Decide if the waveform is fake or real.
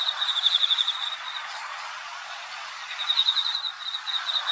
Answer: fake